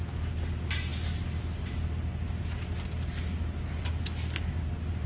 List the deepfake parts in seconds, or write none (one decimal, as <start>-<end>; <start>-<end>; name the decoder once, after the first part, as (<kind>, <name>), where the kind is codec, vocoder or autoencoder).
none